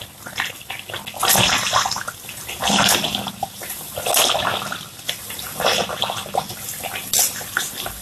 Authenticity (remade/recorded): recorded